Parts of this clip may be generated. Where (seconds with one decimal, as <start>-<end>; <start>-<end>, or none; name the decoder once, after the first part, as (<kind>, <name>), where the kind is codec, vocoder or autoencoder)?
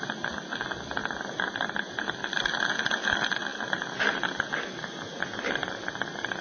none